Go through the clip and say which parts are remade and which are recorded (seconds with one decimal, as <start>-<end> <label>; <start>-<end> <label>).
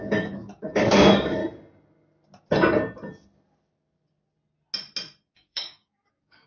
0.0-1.4 remade; 1.4-5.3 recorded; 5.3-6.5 remade